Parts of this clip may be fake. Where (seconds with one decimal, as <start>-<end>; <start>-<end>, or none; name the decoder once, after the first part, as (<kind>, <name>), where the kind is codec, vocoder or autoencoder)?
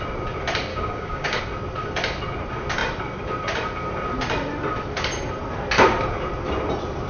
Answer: 0.7-1.4 (codec, DAC)